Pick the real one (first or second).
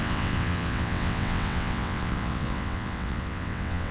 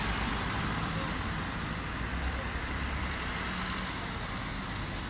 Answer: second